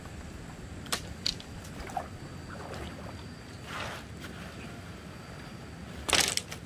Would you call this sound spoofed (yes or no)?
no